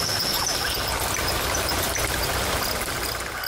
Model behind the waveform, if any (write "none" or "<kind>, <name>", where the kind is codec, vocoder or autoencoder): vocoder, BigVGAN v2